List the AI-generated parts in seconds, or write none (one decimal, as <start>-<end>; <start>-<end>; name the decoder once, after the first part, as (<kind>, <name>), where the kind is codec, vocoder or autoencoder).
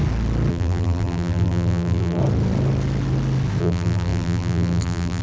0.5-2.2 (vocoder, BigVGAN v2); 3.6-5.2